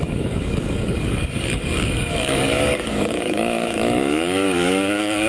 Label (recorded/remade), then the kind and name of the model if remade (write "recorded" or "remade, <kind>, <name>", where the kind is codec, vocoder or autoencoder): remade, codec, DAC